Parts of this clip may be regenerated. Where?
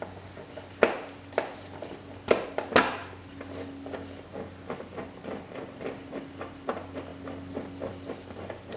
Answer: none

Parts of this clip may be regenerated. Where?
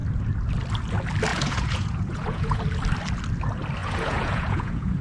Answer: 1.3-2.6 (vocoder, Vocos); 3.8-5.0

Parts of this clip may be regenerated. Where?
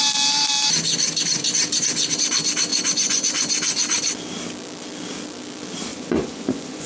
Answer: 2.7-3.3 (vocoder, Vocos); 5.9-6.9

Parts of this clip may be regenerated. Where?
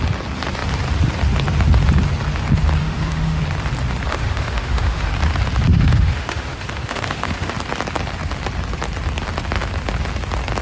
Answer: 2.8-3.4 (autoencoder, DAC-VAE); 4.1-5.1; 5.7-7.5